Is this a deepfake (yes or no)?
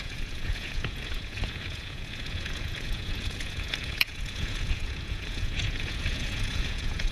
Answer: yes